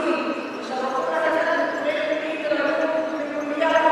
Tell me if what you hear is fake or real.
real